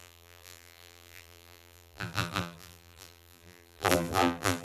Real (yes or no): no